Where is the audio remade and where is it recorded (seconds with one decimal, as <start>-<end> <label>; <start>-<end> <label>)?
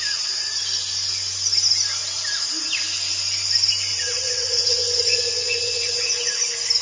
0.0-3.9 recorded; 3.9-6.3 remade; 6.3-6.8 recorded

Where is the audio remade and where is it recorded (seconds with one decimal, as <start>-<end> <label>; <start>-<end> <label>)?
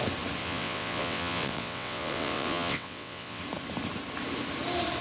0.0-0.4 recorded; 0.4-3.4 remade; 3.4-5.0 recorded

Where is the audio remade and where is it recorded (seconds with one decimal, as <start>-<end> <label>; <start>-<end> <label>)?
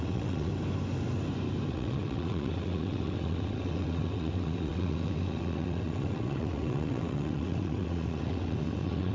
0.0-0.5 remade; 0.5-1.7 recorded; 1.7-9.1 remade